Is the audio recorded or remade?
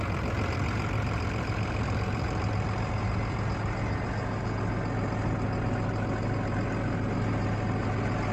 recorded